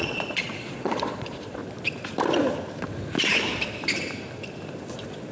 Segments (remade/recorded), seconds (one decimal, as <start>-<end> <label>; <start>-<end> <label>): 0.0-1.6 remade; 1.6-4.8 recorded; 4.8-5.3 remade